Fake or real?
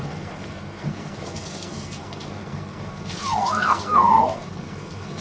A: fake